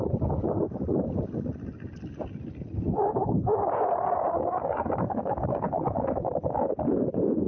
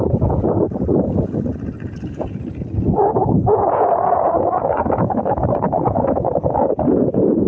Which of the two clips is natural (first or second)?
first